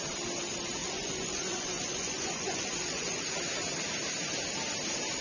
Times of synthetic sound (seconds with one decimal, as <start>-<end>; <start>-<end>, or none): 0.8-3.2